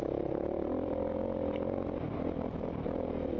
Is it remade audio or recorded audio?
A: recorded